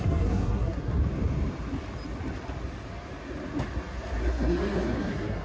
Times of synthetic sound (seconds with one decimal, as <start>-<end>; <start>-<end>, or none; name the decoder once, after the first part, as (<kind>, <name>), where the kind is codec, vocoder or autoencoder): 0.0-1.0 (codec, SNAC); 4.2-5.4